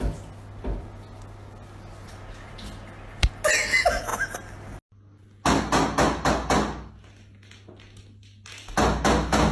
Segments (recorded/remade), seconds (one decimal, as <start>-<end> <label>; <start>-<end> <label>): 0.0-9.5 recorded